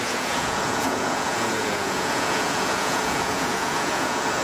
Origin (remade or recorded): remade